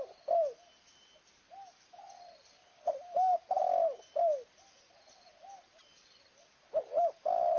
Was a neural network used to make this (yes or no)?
no